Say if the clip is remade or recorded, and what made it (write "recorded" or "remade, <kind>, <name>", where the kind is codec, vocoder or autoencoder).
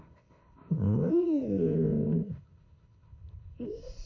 remade, codec, ZipCodec